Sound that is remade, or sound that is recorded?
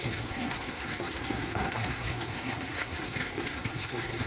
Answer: remade